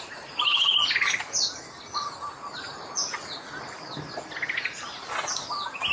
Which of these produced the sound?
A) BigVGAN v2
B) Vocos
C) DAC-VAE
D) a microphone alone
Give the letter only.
D